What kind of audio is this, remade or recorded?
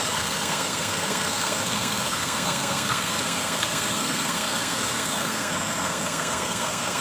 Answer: remade